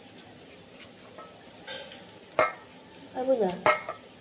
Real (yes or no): yes